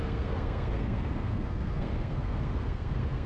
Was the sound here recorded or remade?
remade